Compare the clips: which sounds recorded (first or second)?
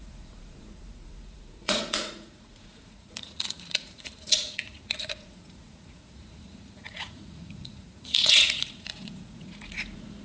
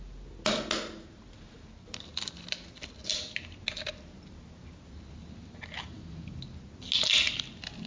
second